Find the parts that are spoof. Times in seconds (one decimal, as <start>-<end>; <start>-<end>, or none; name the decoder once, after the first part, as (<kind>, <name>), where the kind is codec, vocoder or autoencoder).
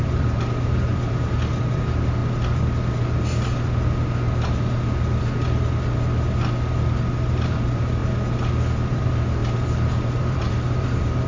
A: 0.0-2.2 (vocoder, BigVGAN v2); 7.2-8.0; 8.9-9.4; 10.1-11.3